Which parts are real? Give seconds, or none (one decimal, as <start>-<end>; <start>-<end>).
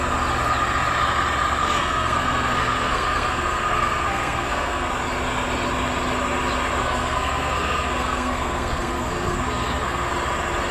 0.0-1.6; 4.9-6.8; 10.1-10.7